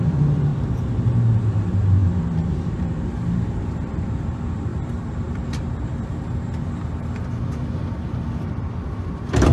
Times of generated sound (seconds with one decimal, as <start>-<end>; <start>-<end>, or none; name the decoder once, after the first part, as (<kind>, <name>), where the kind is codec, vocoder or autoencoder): 0.0-0.5 (vocoder, BigVGAN v2); 1.4-9.5